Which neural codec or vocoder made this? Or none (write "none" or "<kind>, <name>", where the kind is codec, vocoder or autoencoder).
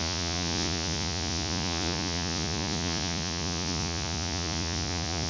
vocoder, Vocos